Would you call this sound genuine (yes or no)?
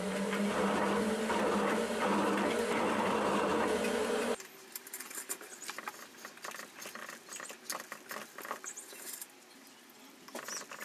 yes